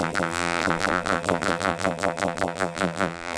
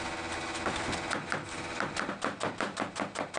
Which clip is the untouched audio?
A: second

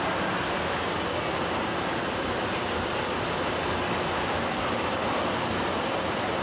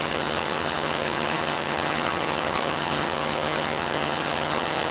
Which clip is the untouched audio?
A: first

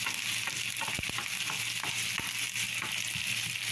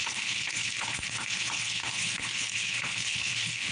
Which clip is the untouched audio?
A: first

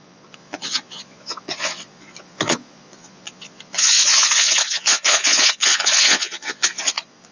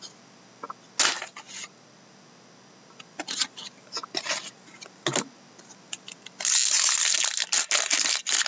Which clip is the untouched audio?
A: second